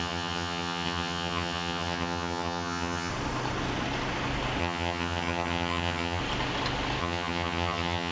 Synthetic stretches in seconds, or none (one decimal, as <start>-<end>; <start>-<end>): 0.0-3.1; 4.6-6.2; 7.0-8.1